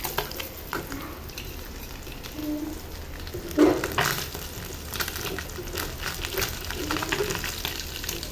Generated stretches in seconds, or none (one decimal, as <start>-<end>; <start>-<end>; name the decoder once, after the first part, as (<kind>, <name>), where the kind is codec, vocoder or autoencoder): none